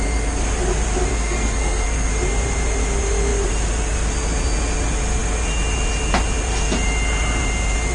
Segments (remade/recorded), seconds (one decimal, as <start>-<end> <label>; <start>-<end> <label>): 0.0-1.1 recorded; 1.1-2.1 remade; 2.1-7.9 recorded